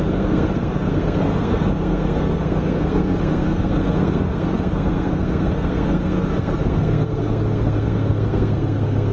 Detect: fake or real fake